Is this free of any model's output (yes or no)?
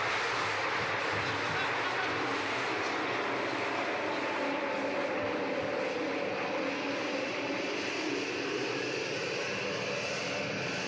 yes